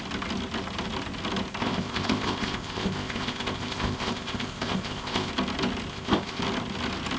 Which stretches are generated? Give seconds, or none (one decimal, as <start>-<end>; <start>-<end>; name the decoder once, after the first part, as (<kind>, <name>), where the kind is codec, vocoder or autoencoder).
1.6-5.3 (codec, ZipCodec); 5.9-6.4